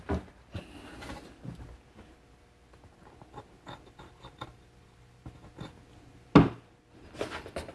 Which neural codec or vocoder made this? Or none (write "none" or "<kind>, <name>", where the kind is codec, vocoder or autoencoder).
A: none